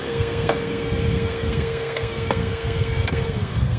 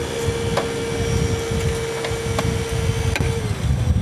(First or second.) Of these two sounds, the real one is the second